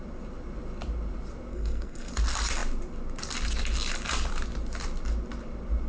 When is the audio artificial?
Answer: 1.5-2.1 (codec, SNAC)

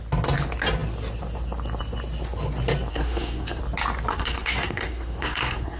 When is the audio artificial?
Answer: 2.9-3.6 (codec, SNAC); 4.1-5.8

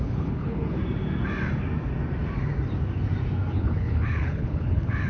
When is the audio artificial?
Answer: 0.0-0.8 (codec, HILCodec); 3.5-5.1

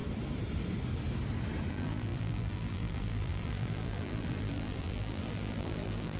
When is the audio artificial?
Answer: 1.7-6.2 (vocoder, BigVGAN v2)

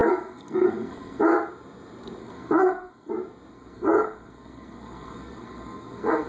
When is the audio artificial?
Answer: 0.0-1.2 (codec, SNAC); 2.2-3.1; 3.5-6.3